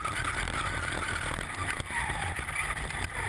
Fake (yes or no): no